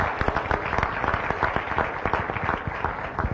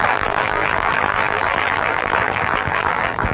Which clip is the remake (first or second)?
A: second